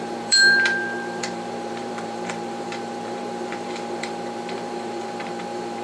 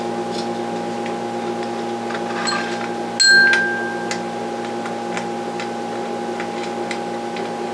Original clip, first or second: second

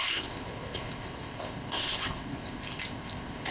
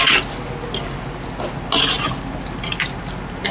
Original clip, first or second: second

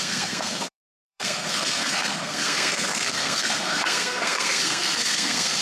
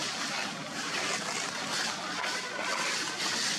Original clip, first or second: second